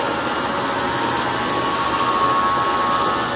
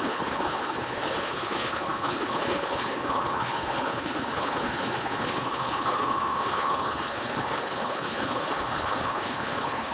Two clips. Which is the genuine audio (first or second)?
first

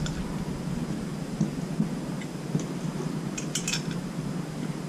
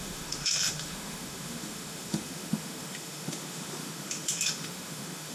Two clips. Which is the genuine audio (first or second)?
first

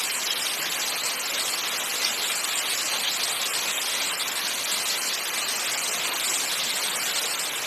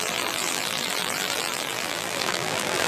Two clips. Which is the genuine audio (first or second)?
first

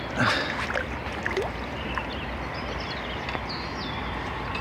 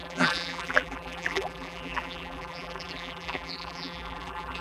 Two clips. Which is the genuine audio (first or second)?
first